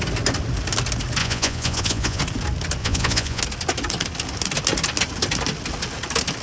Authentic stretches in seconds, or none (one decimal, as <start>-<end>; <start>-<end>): 0.0-1.2; 2.2-2.8; 3.4-6.4